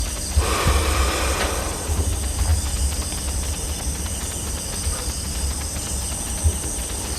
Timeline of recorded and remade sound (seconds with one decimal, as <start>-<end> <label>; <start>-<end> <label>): 0.0-7.2 recorded